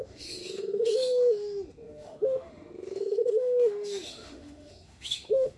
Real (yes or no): no